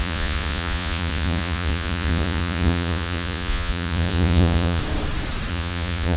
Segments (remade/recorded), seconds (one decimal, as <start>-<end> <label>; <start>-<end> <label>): 0.0-4.8 remade; 4.8-5.5 recorded; 5.5-6.2 remade